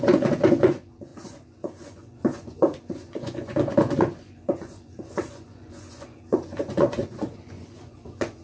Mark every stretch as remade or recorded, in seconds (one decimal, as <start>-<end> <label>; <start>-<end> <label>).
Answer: 0.0-8.4 remade